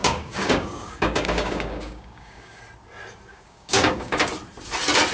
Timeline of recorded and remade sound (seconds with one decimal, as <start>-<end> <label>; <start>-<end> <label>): 0.0-2.6 remade; 2.6-3.3 recorded; 3.3-4.2 remade; 4.2-5.1 recorded